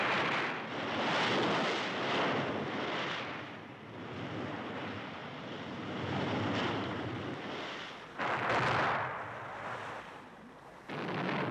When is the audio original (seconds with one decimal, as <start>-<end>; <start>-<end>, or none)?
0.0-5.2; 7.1-11.5